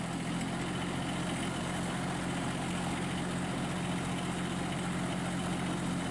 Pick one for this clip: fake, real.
real